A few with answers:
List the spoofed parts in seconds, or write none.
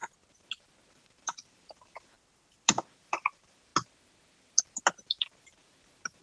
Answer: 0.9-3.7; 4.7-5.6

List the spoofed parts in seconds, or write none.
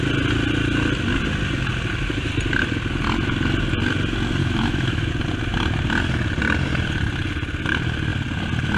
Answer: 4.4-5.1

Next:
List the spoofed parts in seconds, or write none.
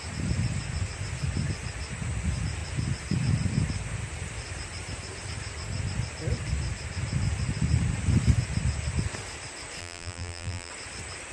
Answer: 9.8-10.7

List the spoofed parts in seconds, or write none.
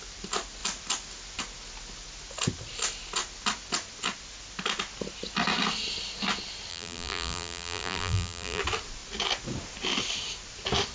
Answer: 6.7-8.6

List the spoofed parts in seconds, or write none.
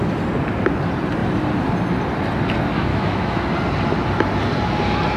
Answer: 2.9-3.4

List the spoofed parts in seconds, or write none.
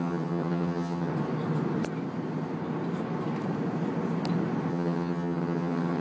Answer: 0.0-1.1; 4.7-6.0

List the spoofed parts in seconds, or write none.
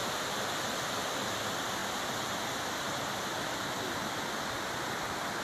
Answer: 0.0-0.5